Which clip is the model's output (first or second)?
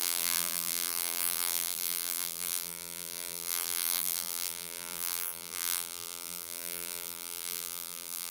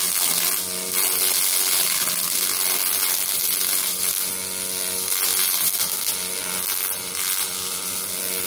first